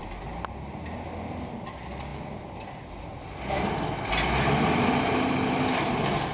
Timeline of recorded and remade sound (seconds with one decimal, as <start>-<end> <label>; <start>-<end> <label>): 0.0-6.3 recorded